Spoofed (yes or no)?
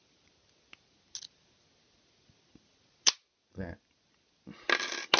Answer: no